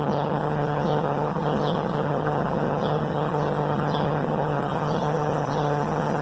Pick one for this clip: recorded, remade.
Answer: remade